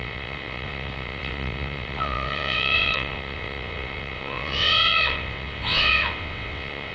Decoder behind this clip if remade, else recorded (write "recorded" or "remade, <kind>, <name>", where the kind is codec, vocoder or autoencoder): remade, vocoder, WaveNeXt